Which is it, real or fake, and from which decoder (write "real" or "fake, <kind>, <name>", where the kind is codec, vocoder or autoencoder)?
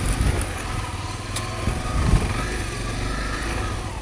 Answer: real